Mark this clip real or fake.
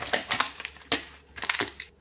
real